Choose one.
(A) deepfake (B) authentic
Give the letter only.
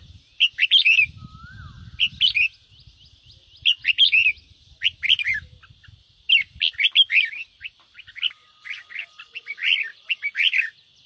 B